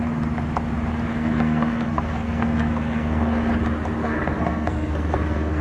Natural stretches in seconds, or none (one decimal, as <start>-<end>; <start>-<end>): 0.0-1.1; 3.5-4.0